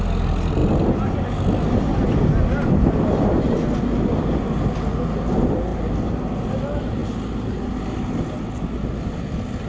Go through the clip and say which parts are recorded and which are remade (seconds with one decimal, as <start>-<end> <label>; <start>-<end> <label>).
0.0-9.7 recorded